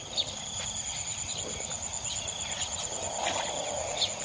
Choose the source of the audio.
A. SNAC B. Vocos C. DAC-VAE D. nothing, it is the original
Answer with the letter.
D